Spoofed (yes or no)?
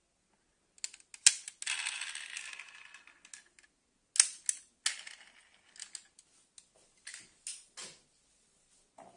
no